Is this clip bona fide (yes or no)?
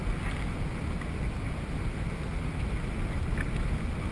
yes